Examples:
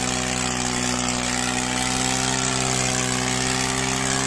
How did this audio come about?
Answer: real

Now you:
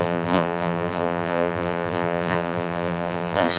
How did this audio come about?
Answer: fake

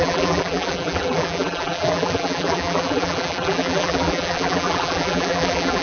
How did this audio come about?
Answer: fake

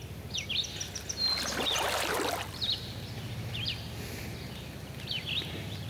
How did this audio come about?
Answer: fake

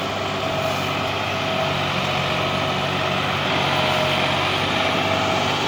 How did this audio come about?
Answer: real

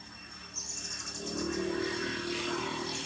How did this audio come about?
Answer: real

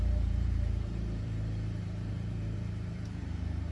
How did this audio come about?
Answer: fake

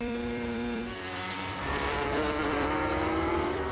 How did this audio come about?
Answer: fake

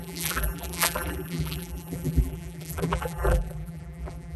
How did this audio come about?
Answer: fake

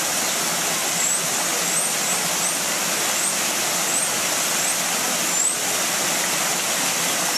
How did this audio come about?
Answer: real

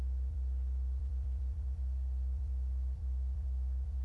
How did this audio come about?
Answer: fake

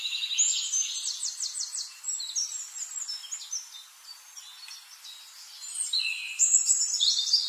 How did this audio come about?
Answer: real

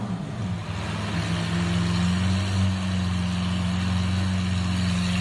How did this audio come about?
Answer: real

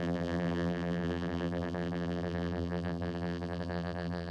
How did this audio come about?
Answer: fake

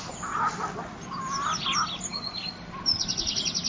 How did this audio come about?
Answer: real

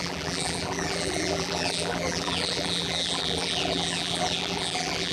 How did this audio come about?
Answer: fake